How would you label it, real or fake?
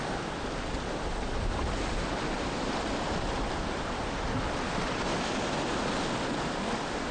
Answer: real